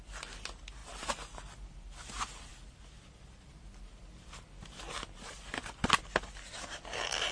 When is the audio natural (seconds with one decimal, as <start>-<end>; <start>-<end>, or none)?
0.0-7.3